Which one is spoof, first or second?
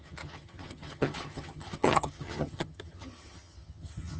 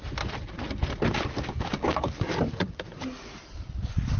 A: first